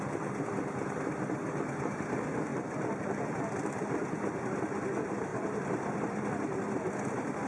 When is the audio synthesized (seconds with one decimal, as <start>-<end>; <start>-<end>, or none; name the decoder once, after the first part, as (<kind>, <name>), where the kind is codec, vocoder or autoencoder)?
5.3-5.9 (vocoder, BigVGAN v2)